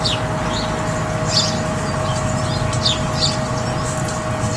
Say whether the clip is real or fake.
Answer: real